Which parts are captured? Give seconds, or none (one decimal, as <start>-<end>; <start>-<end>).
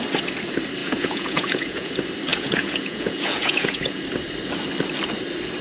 0.0-0.8; 1.9-2.3; 4.0-5.6